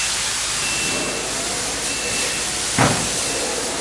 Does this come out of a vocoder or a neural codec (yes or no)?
no